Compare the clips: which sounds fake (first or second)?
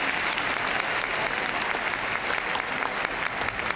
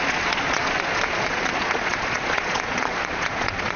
second